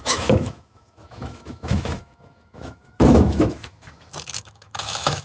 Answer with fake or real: fake